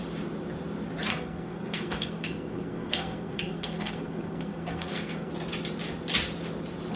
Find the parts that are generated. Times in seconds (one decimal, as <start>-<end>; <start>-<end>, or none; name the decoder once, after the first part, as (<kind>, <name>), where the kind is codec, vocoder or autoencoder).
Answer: 1.1-5.3 (codec, SNAC)